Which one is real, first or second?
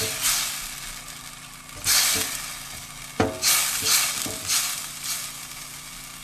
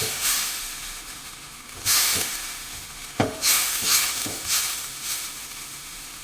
first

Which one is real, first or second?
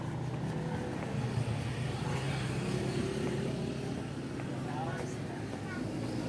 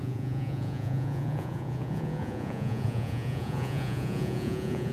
first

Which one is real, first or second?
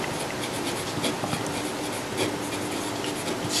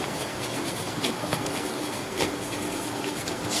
first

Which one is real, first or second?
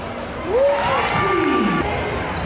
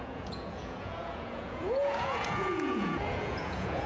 first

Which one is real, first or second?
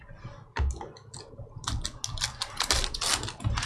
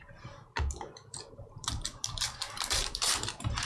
first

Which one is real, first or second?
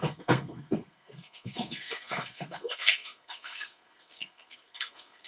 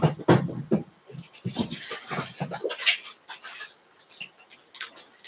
second